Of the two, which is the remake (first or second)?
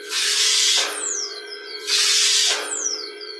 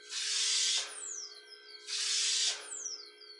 first